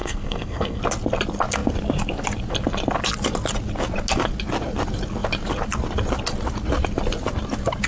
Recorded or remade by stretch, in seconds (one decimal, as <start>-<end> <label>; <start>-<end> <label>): 0.0-0.8 remade; 0.8-7.9 recorded